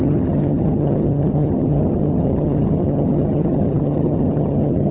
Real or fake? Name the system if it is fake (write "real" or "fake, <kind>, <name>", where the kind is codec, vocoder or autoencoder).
fake, vocoder, HiFi-GAN